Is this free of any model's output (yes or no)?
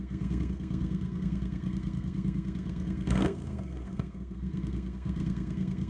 no